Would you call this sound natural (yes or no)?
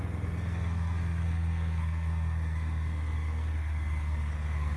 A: no